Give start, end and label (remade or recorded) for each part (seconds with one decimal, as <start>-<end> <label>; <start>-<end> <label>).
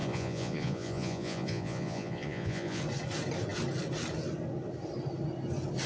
0.0-2.8 remade; 2.8-5.9 recorded